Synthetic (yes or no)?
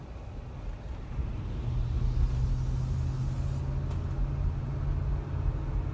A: no